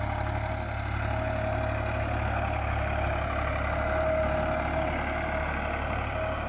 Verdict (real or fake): real